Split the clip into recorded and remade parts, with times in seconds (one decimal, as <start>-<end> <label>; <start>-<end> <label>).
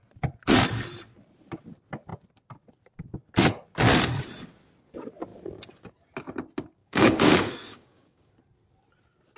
0.0-6.8 recorded; 6.8-8.3 remade; 8.3-9.4 recorded